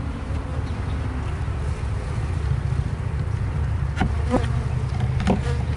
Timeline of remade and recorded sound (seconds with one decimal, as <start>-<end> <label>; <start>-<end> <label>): 0.0-4.0 remade; 4.0-4.9 recorded; 4.9-5.8 remade